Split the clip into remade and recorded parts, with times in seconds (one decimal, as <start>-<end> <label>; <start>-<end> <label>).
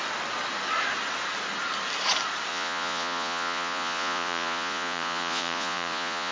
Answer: 0.0-2.5 recorded; 2.5-6.3 remade